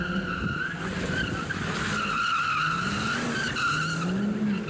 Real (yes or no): yes